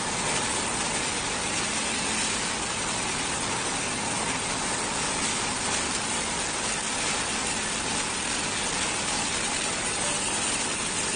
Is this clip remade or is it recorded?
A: recorded